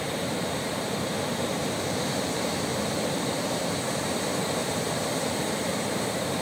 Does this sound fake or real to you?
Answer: fake